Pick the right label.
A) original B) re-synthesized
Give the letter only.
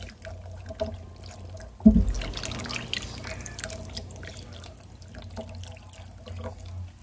A